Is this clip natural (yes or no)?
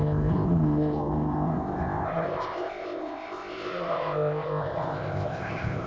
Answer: no